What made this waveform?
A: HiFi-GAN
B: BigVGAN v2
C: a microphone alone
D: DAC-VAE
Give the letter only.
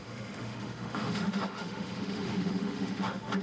D